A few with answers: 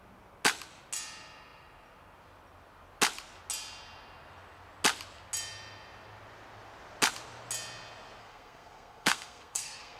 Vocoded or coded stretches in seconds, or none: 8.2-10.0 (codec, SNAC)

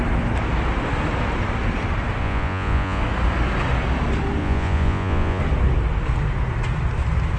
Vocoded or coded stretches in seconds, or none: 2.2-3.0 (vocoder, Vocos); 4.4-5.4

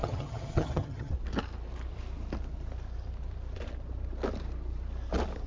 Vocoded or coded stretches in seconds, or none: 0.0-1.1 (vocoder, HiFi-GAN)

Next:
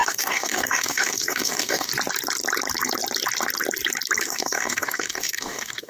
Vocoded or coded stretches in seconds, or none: 0.0-1.9 (codec, DAC); 4.2-5.9

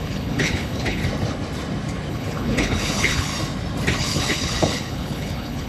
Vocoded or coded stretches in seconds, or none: 0.0-1.0 (codec, HILCodec); 2.1-3.3; 4.0-5.7

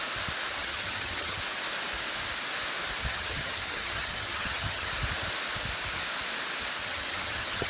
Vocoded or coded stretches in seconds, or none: 0.5-1.4 (vocoder, HiFi-GAN); 3.0-4.9; 6.8-7.7